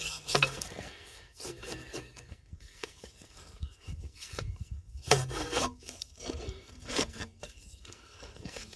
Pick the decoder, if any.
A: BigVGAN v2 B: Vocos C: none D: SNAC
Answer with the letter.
D